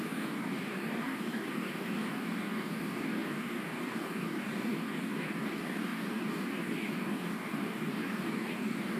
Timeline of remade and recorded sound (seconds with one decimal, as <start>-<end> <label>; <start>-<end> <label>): 0.0-9.0 remade